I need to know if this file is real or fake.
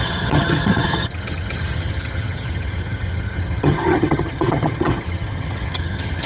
fake